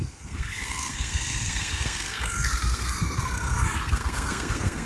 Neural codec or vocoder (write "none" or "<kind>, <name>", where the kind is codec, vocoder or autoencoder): codec, SNAC